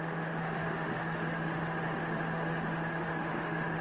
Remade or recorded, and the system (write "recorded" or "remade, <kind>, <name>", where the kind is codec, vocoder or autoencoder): remade, autoencoder, DAC-VAE